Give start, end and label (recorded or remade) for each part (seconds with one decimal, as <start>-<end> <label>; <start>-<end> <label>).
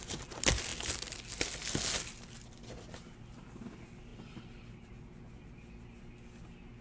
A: 0.0-6.8 recorded